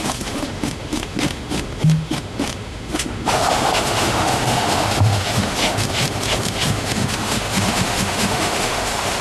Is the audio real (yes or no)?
no